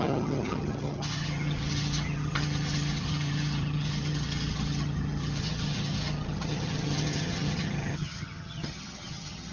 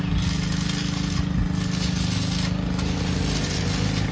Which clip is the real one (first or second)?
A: second